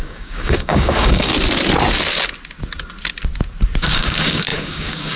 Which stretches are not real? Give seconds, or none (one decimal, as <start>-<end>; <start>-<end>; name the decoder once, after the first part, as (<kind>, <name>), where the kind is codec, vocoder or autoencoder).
0.0-1.3 (codec, DAC); 3.8-5.2

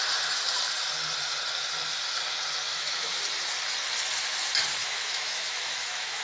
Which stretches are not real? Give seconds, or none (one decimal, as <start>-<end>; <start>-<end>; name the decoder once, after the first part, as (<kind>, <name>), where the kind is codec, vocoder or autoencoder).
2.7-3.2 (autoencoder, DAC-VAE); 4.8-6.2